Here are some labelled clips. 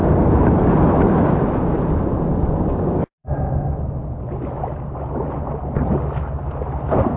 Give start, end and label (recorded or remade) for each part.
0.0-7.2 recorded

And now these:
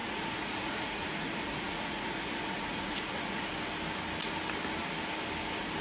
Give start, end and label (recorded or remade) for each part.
0.0-3.5 remade; 3.5-5.8 recorded